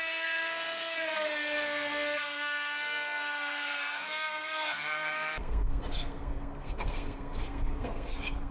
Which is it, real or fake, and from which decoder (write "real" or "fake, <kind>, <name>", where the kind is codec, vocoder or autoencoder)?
fake, codec, SNAC